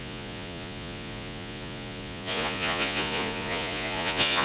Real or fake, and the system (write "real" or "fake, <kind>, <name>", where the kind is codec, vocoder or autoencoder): fake, vocoder, Vocos